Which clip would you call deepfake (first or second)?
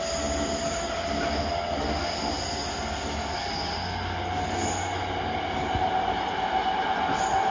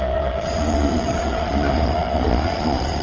second